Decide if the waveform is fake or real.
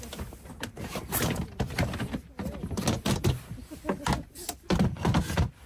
real